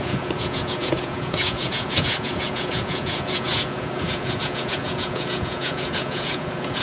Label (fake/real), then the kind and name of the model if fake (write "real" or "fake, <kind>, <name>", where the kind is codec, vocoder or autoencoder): fake, vocoder, Vocos